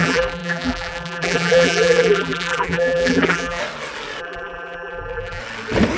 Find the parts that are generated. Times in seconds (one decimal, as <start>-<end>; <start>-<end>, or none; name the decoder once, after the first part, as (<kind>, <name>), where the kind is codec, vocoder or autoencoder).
0.0-3.6 (vocoder, BigVGAN v2); 4.2-5.4